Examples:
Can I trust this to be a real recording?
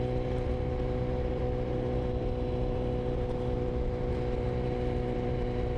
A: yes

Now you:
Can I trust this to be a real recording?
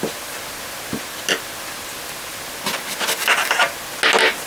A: yes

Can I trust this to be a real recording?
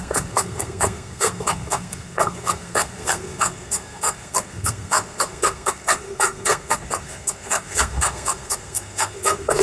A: no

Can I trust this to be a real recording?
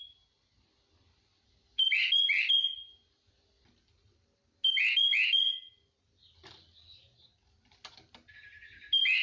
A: yes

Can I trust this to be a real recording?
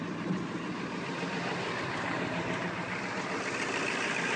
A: yes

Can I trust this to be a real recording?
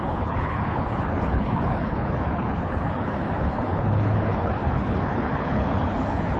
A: no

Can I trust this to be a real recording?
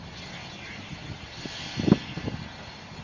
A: yes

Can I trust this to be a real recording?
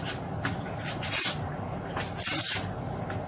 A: yes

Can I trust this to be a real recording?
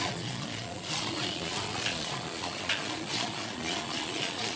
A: no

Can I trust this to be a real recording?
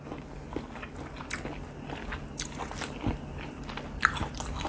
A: yes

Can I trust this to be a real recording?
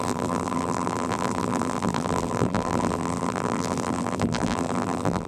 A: no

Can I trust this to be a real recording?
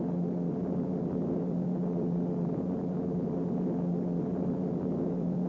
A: yes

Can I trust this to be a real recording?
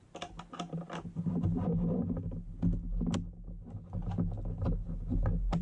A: yes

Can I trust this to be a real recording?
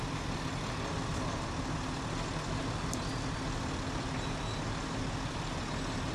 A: yes